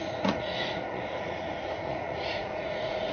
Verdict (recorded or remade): remade